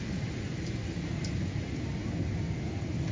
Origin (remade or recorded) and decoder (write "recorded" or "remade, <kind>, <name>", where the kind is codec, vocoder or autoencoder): recorded